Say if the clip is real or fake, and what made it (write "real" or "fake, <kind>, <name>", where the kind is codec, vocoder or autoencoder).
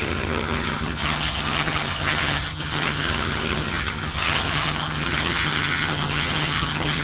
fake, vocoder, HiFi-GAN